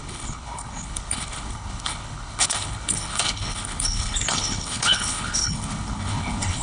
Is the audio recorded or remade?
remade